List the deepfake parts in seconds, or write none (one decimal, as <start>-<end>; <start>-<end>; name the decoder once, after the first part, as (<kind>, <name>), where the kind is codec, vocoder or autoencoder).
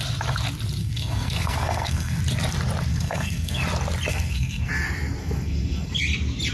0.8-2.2 (codec, SNAC); 2.9-3.6; 4.1-4.7; 5.2-6.0